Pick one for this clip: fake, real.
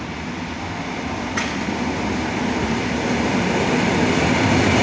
real